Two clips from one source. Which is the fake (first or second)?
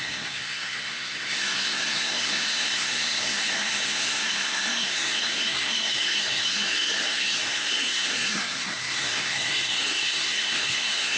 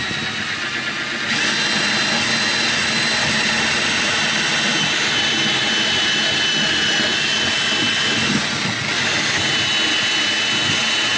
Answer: first